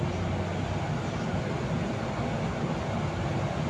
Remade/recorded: recorded